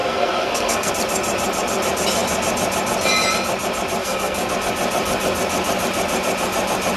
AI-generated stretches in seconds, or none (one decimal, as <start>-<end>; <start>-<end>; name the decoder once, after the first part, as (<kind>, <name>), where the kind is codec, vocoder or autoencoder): 0.0-0.9 (codec, SNAC); 4.0-4.5